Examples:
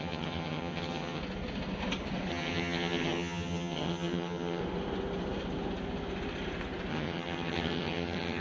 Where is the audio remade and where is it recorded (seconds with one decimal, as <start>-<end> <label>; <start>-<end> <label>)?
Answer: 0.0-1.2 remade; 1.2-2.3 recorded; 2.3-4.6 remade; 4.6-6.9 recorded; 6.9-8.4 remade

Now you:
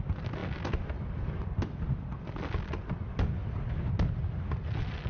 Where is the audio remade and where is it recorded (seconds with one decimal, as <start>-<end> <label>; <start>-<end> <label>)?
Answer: 0.0-5.1 recorded

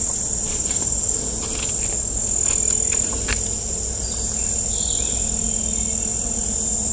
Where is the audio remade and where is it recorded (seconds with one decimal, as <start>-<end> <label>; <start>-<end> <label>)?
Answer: 0.0-6.9 recorded